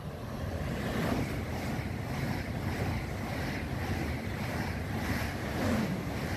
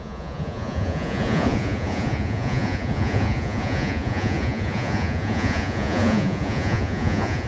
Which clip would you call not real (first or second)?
second